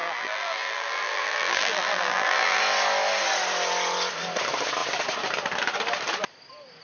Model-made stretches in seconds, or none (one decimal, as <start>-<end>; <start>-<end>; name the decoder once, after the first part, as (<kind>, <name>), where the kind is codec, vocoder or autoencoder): 0.0-2.6 (vocoder, BigVGAN v2)

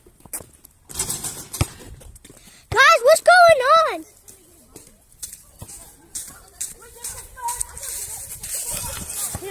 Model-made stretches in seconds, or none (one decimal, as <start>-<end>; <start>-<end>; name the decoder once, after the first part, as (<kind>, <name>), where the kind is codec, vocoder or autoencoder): none